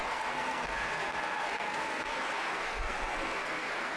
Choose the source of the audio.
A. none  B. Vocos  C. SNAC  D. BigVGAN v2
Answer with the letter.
C